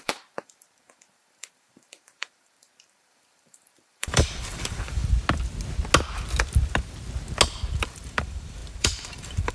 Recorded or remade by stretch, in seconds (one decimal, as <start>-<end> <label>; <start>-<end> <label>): 0.0-5.0 remade; 5.0-7.8 recorded; 7.8-9.5 remade